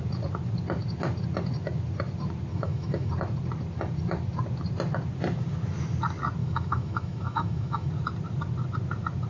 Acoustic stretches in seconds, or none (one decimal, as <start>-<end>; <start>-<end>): 0.0-2.5; 3.1-6.4; 7.9-9.3